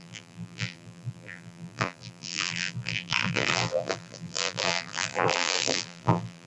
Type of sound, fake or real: fake